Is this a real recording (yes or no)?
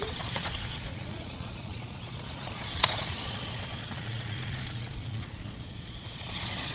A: no